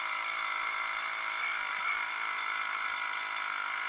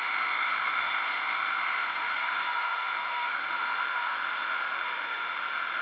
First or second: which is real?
first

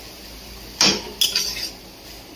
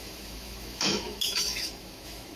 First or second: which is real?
first